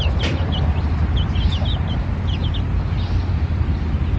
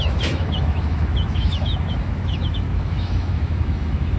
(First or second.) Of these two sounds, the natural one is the first